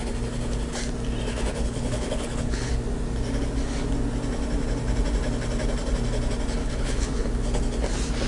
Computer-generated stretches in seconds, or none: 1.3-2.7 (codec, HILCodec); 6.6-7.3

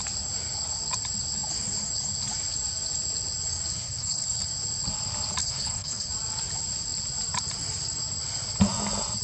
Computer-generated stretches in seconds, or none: 3.7-4.5 (codec, HILCodec); 5.4-6.1

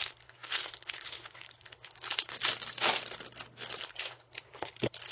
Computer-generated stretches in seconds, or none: 0.0-2.3 (codec, HILCodec); 3.8-5.1

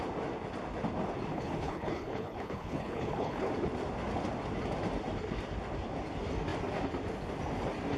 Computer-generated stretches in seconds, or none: 1.3-3.5 (codec, HILCodec)

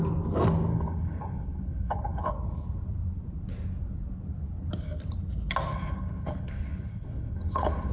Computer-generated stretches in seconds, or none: 0.7-2.3 (codec, HILCodec); 5.7-7.9

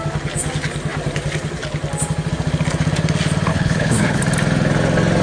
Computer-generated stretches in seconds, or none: 3.5-4.2 (codec, HILCodec)